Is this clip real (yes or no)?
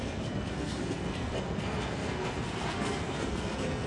no